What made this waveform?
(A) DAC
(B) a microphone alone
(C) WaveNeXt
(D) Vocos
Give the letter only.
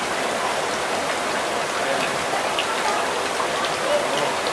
B